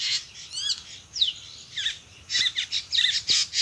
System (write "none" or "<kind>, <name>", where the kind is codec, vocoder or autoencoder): none